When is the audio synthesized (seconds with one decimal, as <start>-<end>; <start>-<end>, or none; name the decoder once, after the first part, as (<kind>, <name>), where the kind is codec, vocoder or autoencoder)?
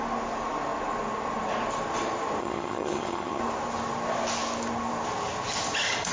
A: 2.4-3.4 (vocoder, HiFi-GAN)